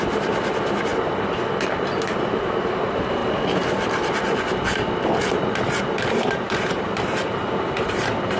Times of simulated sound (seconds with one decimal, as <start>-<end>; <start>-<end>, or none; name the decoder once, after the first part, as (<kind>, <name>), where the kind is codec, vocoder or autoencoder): 0.0-0.9 (vocoder, BigVGAN v2); 2.3-3.2; 6.7-8.4